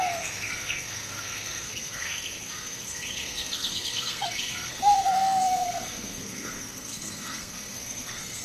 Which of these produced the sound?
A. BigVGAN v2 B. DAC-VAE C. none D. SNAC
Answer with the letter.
D